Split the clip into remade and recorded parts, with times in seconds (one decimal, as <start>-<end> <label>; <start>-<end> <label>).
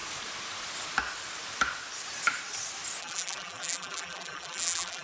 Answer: 0.0-3.0 recorded; 3.0-5.0 remade